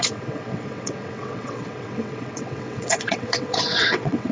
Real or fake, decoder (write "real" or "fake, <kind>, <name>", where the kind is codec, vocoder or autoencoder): fake, vocoder, WaveNeXt